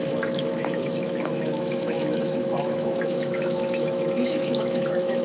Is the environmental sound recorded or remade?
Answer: remade